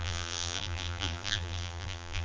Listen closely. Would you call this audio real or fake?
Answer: fake